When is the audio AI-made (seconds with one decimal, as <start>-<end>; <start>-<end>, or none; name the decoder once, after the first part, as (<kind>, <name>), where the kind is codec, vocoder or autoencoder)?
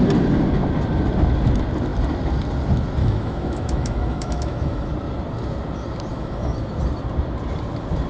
3.0-4.9 (autoencoder, DAC-VAE); 6.1-6.7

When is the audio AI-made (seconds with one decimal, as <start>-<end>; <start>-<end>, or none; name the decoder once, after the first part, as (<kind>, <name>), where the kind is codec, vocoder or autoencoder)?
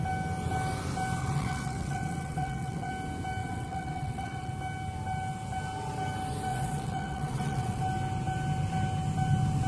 1.2-2.9 (vocoder, WaveNeXt); 3.4-4.5; 6.5-7.8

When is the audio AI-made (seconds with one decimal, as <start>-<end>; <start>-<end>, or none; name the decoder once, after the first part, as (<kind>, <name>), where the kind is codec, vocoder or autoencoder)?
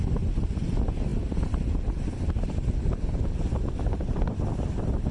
none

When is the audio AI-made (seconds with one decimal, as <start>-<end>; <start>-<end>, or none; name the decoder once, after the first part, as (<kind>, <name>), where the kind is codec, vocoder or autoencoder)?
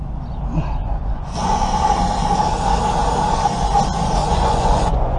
0.8-1.7 (vocoder, Vocos); 4.2-5.2